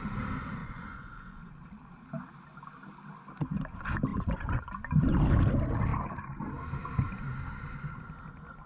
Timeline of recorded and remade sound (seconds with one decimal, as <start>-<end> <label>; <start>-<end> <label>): 0.0-0.6 recorded; 0.6-1.5 remade; 1.5-4.1 recorded; 4.1-4.6 remade; 4.6-8.7 recorded